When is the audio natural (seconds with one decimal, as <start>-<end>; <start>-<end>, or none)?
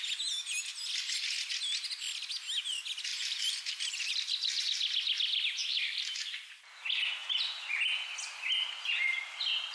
0.0-3.1; 4.6-5.6; 6.5-9.7